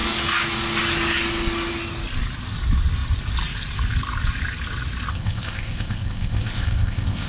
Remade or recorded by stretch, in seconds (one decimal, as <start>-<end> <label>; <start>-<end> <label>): 0.0-5.1 recorded; 5.1-7.3 remade